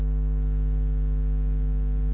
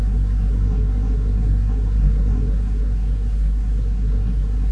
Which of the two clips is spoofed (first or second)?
second